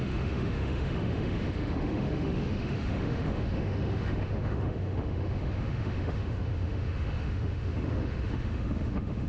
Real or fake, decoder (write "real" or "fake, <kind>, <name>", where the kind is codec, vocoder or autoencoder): fake, autoencoder, DAC-VAE